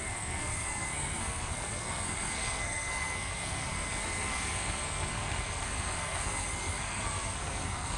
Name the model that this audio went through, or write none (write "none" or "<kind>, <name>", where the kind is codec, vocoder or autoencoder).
codec, SNAC